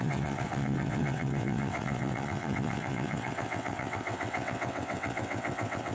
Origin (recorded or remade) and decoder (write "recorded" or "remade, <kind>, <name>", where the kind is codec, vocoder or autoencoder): remade, vocoder, WaveNeXt